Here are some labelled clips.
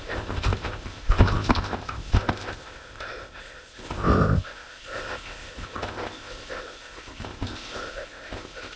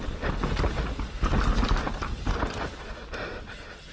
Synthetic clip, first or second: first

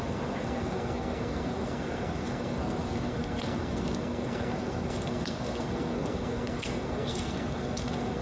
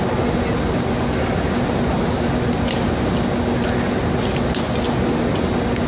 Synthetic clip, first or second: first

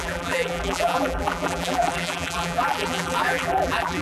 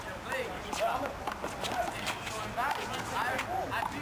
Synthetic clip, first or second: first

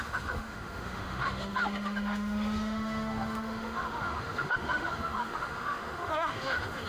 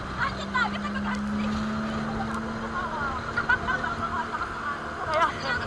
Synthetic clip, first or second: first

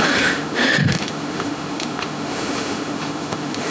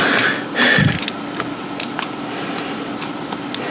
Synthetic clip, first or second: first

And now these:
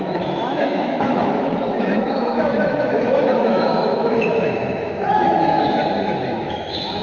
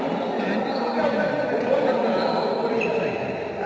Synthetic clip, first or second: first